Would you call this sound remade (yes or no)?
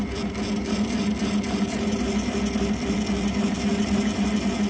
no